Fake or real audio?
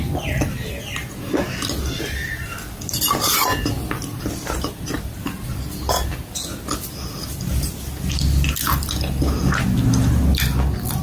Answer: real